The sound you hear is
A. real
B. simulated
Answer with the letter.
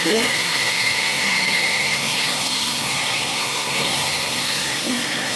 B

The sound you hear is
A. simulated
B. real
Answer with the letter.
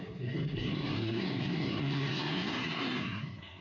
A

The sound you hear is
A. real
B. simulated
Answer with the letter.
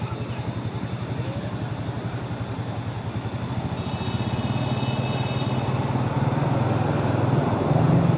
A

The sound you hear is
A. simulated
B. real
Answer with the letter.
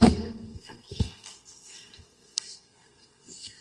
A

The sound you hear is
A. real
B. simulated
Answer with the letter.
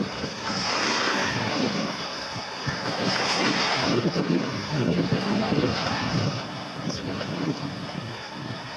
B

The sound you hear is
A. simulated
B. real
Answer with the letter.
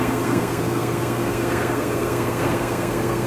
A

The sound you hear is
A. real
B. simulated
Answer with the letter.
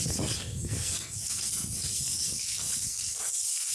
B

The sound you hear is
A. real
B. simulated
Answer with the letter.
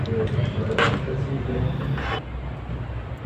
A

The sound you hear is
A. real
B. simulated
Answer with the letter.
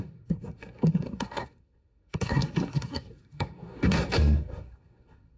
B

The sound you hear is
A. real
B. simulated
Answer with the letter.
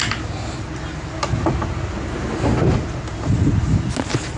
A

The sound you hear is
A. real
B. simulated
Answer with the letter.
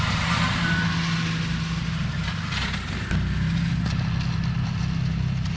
A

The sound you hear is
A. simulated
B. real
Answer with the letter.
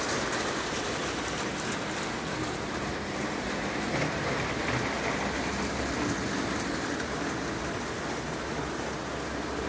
B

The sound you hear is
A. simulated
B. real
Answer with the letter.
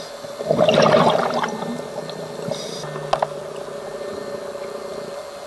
B